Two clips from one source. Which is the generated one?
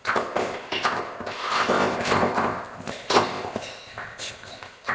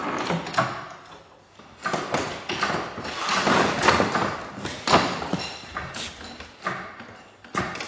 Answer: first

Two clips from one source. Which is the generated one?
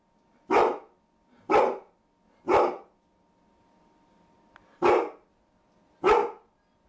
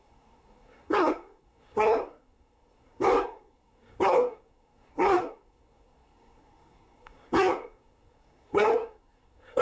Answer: second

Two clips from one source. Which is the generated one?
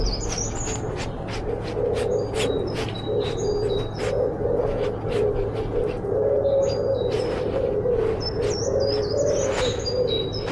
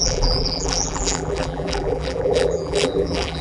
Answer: second